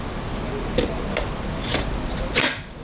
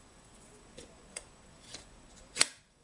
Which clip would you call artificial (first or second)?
second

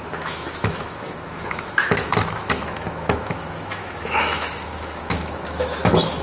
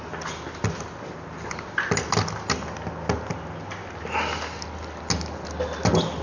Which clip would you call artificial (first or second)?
first